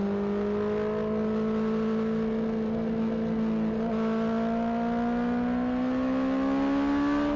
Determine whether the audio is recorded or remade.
recorded